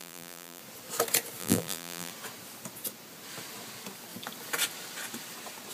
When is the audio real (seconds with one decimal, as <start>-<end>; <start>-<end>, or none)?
0.6-1.4; 2.1-5.7

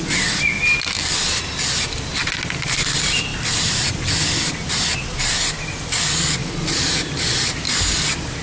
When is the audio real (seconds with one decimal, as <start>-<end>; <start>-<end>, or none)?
0.0-3.3; 4.5-6.4; 7.4-8.4

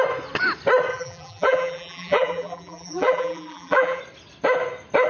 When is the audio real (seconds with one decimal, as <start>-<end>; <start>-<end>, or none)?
0.0-0.9; 4.0-5.1